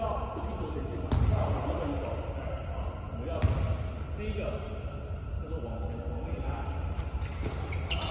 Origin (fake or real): real